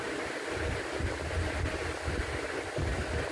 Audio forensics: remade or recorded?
recorded